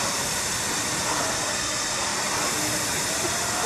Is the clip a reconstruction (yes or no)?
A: no